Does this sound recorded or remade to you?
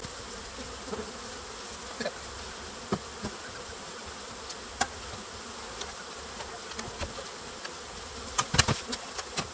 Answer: recorded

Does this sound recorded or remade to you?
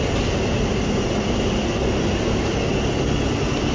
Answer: recorded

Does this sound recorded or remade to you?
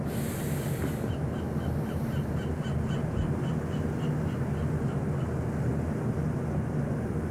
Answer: recorded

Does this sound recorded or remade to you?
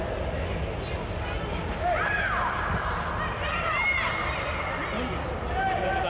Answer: recorded